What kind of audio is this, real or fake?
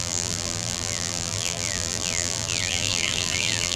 fake